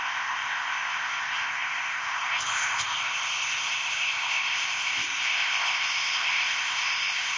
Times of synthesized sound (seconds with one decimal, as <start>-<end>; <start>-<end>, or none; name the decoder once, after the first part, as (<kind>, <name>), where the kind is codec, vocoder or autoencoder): 0.0-7.4 (codec, ZipCodec)